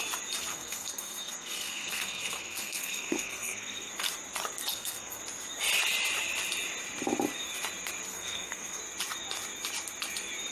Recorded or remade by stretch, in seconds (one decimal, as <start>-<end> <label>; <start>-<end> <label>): 0.0-0.5 recorded; 0.5-3.9 remade; 3.9-4.7 recorded; 4.7-5.2 remade; 5.2-8.1 recorded; 8.1-8.8 remade; 8.8-10.5 recorded